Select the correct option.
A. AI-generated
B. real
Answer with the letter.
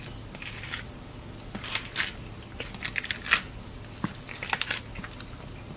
B